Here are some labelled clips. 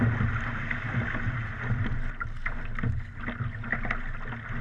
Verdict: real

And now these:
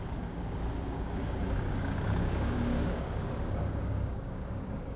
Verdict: fake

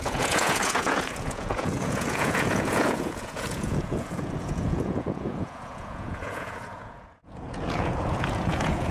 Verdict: fake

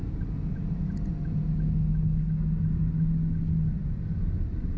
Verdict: real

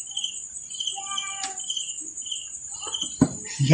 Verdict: real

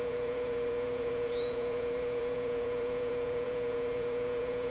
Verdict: fake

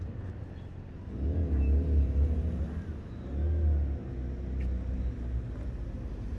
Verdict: real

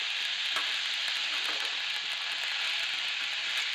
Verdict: real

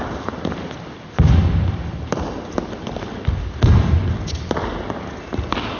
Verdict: real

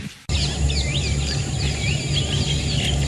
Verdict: real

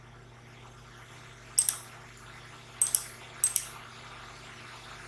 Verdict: real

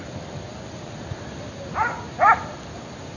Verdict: real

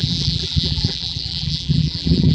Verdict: fake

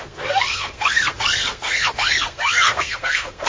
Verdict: fake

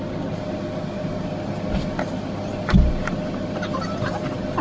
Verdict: real